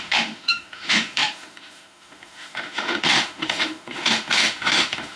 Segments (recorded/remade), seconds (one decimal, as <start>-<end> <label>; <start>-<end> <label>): 0.0-5.2 remade